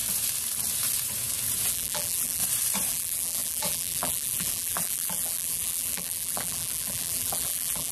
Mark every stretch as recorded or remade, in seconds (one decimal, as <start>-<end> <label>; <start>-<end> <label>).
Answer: 0.0-1.7 recorded; 1.7-2.4 remade; 2.4-2.9 recorded; 2.9-7.9 remade